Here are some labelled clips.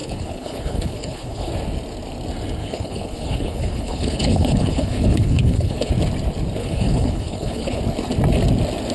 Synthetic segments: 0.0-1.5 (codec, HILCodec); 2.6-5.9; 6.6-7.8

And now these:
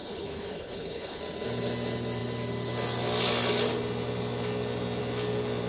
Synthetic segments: 0.0-1.2 (codec, HILCodec)

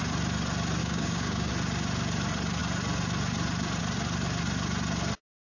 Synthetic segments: 0.8-1.5 (codec, DAC)

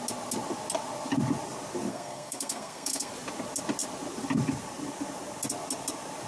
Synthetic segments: 1.9-3.1 (codec, SNAC)

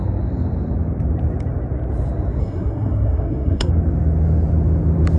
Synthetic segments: 2.4-3.7 (codec, SNAC)

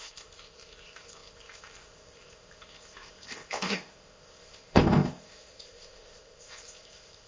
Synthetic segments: 0.0-7.3 (codec, ZipCodec)